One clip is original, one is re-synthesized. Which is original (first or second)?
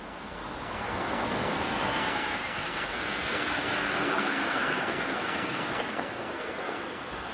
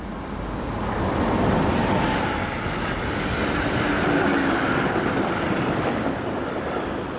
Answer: second